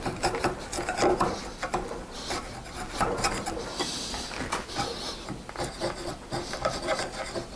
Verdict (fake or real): real